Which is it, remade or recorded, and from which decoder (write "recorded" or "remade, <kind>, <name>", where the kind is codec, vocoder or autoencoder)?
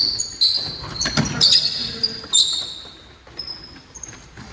recorded